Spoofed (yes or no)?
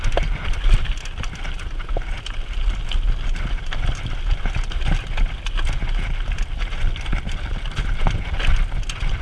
no